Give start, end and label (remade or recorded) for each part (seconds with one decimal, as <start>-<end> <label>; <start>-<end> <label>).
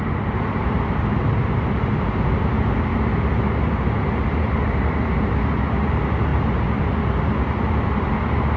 0.0-8.6 recorded